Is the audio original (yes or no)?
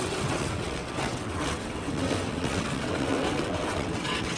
no